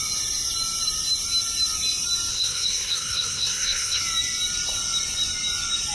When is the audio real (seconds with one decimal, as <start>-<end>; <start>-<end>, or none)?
0.0-2.3; 4.0-5.9